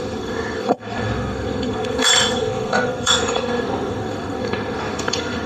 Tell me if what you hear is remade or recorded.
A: remade